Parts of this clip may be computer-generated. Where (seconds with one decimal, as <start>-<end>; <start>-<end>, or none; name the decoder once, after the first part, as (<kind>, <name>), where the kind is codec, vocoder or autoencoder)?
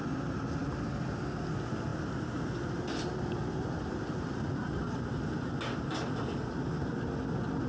none